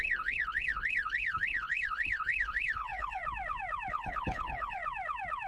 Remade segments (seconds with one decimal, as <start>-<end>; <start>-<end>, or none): 0.0-3.2; 3.9-4.8